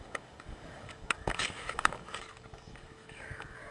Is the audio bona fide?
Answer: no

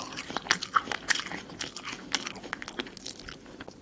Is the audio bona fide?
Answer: yes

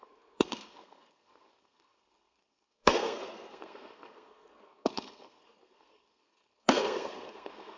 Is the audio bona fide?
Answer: no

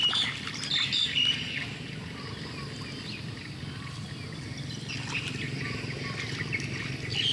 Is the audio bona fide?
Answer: yes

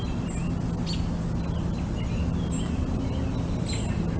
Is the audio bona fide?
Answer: yes